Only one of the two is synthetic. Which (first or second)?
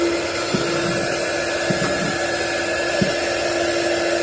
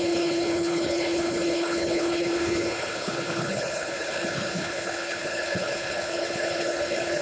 second